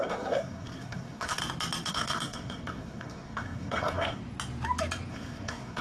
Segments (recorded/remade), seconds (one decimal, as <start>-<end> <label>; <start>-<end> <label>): 0.0-1.4 remade; 1.4-1.9 recorded; 1.9-4.2 remade; 4.2-5.1 recorded; 5.1-5.8 remade